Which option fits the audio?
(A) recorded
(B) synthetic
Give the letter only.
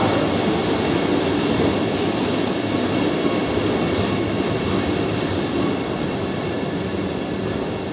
A